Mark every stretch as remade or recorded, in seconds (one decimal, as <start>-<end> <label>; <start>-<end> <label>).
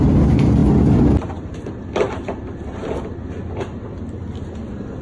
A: 0.0-5.0 recorded